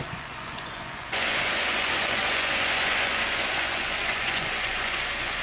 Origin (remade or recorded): remade